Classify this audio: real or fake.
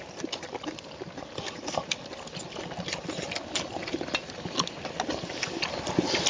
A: real